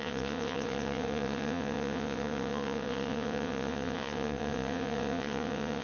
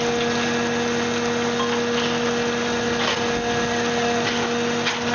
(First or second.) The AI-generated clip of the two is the first